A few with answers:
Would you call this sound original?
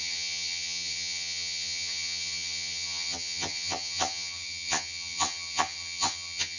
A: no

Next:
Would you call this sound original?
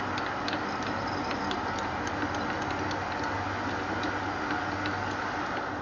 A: yes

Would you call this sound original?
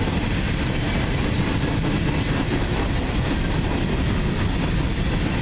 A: yes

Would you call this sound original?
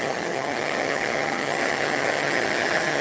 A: no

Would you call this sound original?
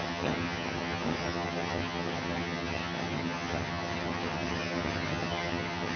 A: no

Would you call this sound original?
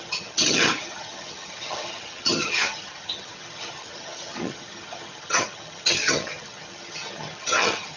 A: no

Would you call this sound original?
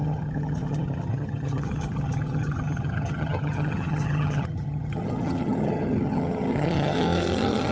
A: no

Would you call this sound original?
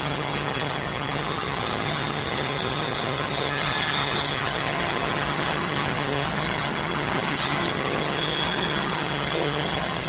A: no